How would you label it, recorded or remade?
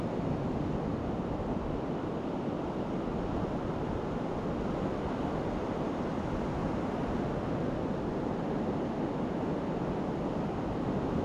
recorded